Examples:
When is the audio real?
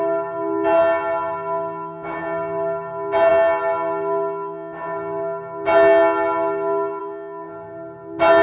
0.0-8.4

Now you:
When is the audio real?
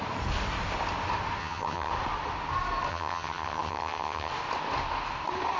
0.0-1.4; 1.9-2.9; 4.3-5.6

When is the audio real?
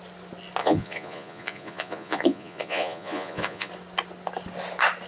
0.0-0.6; 3.7-5.1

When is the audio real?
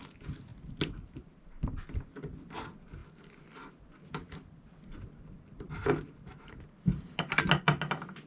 0.0-8.3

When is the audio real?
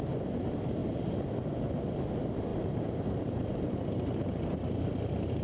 0.0-2.5; 4.8-5.4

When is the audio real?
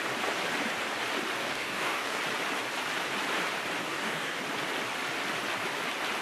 0.0-1.4; 2.2-3.8; 4.4-6.2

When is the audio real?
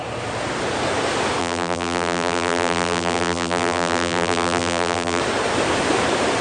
0.0-1.4; 5.2-6.4